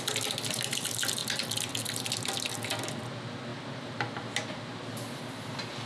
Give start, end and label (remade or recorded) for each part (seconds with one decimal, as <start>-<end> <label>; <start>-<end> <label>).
0.0-5.9 recorded